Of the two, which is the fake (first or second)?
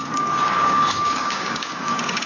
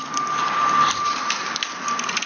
first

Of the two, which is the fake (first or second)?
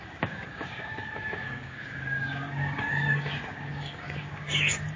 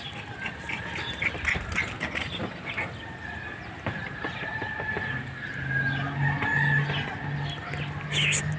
first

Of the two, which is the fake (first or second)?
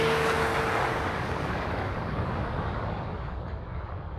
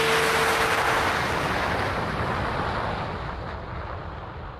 first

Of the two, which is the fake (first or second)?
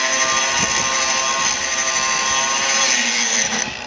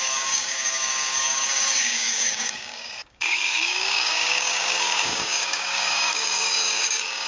second